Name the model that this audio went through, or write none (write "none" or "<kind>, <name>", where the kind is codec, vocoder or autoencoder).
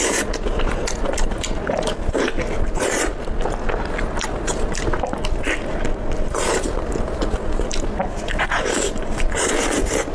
none